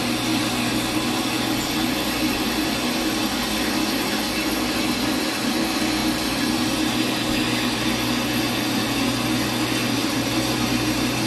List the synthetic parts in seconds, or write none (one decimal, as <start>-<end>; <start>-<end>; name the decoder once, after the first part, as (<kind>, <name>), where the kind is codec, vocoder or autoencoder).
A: 6.0-6.9 (vocoder, BigVGAN v2); 10.0-11.3